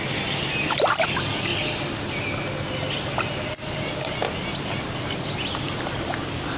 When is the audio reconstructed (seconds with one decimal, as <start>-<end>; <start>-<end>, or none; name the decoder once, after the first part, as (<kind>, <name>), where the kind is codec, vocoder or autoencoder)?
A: 0.0-1.5 (vocoder, BigVGAN v2); 3.7-6.6